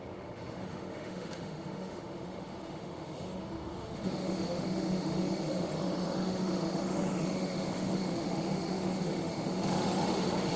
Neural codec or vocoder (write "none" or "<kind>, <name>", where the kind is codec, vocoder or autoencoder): autoencoder, DAC-VAE